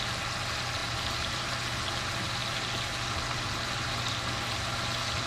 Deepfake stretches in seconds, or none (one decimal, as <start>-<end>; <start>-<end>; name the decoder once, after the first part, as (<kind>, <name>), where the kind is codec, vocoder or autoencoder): 0.8-1.5 (vocoder, BigVGAN v2)

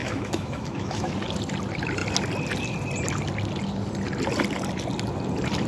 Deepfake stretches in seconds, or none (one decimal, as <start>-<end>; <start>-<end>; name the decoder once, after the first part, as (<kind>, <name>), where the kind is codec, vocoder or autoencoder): 0.0-1.1 (autoencoder, DAC-VAE)